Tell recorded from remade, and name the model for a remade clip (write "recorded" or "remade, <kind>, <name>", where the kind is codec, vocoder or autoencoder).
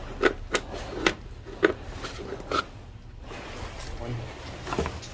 recorded